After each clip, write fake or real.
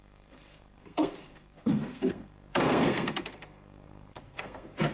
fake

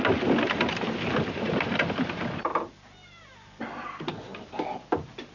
real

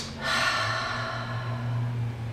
real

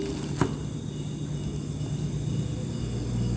real